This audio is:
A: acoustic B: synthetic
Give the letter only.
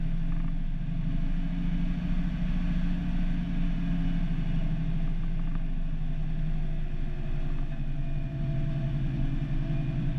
A